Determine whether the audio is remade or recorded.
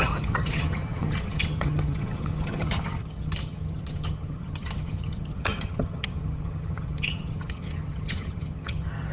remade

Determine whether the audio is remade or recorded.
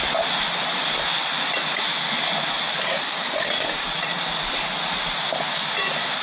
recorded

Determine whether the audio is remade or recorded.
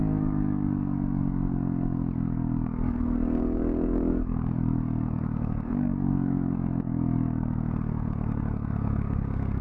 remade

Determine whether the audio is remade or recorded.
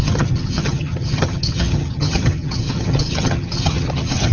remade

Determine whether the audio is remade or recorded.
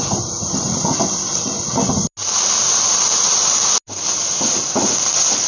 recorded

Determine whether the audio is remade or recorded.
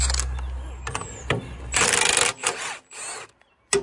recorded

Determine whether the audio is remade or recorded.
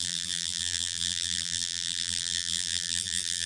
remade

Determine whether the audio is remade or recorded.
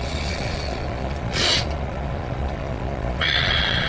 remade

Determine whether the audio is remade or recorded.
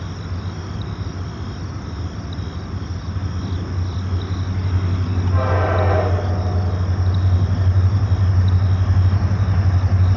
recorded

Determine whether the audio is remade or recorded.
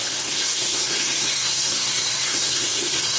remade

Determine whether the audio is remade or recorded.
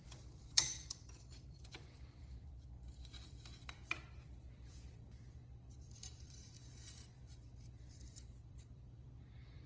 remade